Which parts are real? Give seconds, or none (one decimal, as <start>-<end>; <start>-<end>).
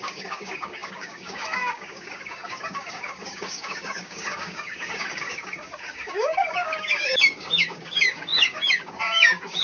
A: none